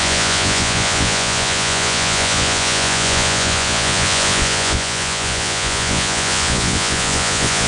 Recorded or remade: remade